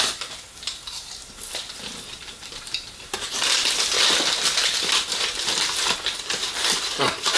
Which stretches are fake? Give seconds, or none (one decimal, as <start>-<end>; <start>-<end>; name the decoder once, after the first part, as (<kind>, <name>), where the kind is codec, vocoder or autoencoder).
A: none